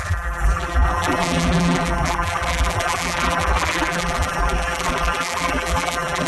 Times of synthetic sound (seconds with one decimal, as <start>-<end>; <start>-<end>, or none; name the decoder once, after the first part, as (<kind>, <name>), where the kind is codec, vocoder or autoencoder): 0.0-6.3 (vocoder, BigVGAN v2)